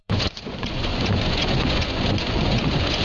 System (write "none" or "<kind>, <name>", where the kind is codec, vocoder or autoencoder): vocoder, Vocos